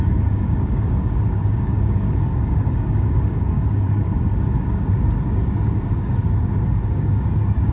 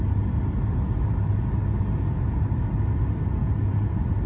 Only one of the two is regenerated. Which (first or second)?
first